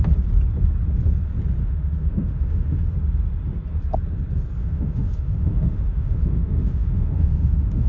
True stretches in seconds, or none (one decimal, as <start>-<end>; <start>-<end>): 0.0-1.6; 2.9-4.6